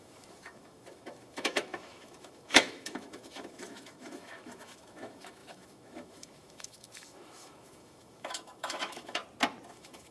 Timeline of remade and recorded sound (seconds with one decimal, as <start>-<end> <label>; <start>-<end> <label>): 0.0-9.2 remade; 9.2-9.7 recorded; 9.7-10.1 remade